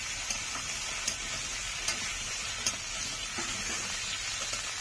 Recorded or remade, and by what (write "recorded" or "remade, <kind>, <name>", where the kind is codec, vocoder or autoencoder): recorded